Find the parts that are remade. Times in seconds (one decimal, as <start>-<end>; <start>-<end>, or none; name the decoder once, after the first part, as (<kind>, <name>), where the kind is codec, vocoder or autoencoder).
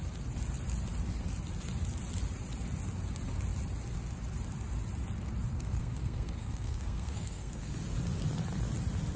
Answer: 5.5-7.7 (codec, SNAC)